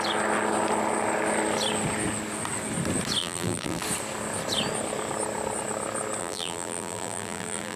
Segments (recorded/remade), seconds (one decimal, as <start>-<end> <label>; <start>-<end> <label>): 0.0-3.2 recorded; 3.2-3.8 remade; 3.8-6.2 recorded; 6.2-7.8 remade